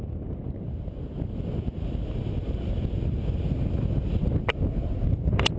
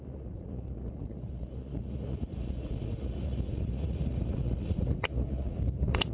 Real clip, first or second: first